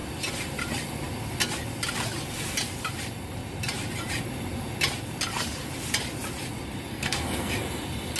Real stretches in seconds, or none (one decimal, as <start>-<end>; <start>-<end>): 0.0-6.9; 7.5-8.2